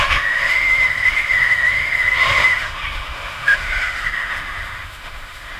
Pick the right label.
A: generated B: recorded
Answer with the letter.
A